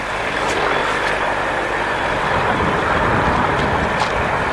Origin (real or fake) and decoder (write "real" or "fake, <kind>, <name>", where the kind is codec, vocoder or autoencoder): real